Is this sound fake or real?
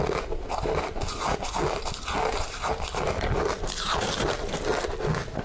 real